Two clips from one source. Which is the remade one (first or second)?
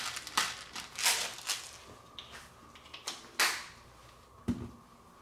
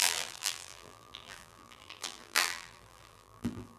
second